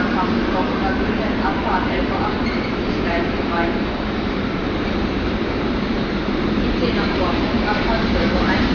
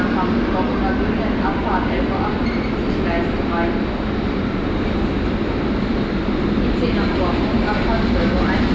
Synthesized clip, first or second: first